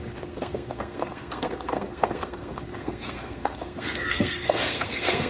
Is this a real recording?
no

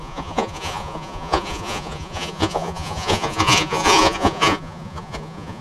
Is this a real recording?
no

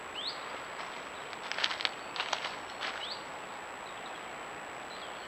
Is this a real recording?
yes